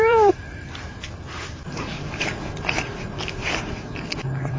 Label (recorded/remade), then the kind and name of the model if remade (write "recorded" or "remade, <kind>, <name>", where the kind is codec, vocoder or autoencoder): remade, vocoder, BigVGAN v2